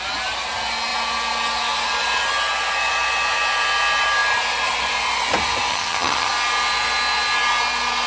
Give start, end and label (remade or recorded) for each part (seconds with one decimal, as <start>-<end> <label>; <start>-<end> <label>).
0.0-5.7 recorded; 5.7-6.3 remade; 6.3-8.1 recorded